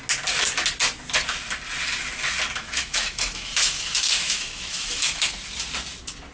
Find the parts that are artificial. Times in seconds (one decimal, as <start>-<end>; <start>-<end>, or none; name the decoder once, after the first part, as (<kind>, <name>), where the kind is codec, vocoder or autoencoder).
2.6-5.3 (autoencoder, DAC-VAE)